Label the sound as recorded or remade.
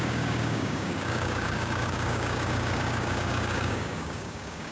remade